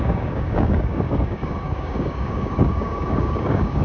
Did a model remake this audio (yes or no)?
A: yes